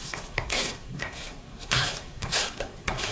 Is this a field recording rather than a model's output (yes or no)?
no